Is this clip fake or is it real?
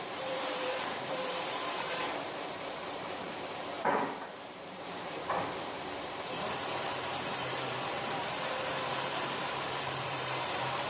fake